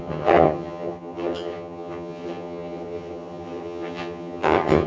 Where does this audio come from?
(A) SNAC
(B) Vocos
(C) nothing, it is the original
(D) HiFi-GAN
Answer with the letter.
D